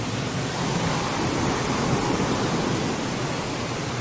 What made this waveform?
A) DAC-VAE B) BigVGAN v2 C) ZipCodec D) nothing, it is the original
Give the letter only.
D